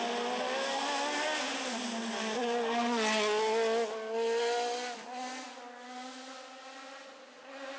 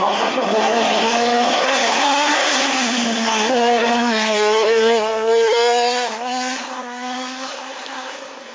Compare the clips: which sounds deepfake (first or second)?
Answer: second